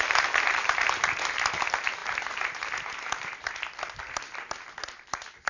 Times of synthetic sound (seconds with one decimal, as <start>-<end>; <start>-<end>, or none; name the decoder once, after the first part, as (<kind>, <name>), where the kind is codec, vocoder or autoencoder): none

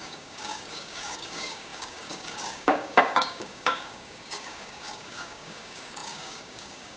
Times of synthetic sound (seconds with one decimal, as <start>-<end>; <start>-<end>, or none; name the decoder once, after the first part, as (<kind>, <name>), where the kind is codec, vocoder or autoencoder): 0.0-7.0 (codec, DAC)

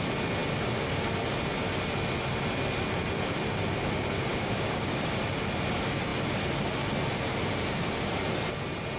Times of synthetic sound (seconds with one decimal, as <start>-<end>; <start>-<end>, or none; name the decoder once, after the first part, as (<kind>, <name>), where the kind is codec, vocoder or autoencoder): 4.3-5.2 (codec, DAC)

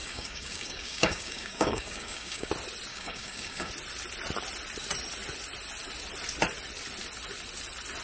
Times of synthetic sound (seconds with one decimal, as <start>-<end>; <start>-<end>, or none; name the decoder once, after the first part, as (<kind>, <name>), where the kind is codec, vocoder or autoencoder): 0.0-2.5 (codec, DAC); 2.9-3.7

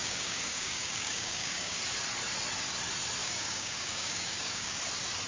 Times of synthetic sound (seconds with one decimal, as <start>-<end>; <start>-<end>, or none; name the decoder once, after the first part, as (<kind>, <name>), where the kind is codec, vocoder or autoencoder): 0.0-1.8 (codec, DAC); 3.2-4.8

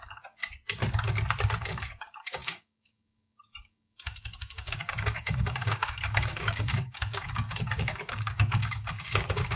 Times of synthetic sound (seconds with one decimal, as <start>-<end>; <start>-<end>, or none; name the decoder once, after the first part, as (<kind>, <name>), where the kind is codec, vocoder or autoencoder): 0.0-0.4 (codec, DAC); 1.6-9.6